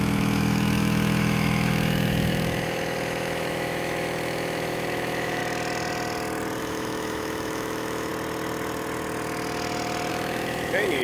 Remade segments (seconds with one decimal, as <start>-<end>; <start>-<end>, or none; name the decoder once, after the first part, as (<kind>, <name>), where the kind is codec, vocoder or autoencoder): 0.0-5.4 (autoencoder, DAC-VAE); 6.6-8.1; 10.1-11.0